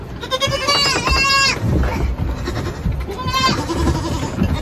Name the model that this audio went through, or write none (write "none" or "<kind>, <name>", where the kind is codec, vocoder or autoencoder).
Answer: none